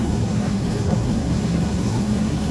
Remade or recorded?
remade